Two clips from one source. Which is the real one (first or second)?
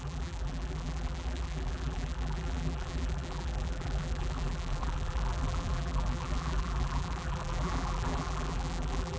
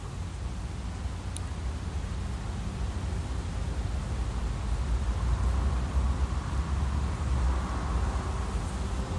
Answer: second